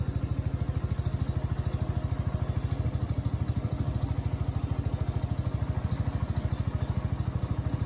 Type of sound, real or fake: real